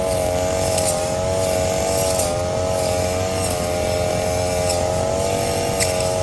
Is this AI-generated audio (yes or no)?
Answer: no